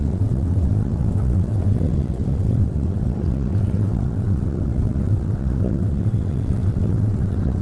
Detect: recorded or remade remade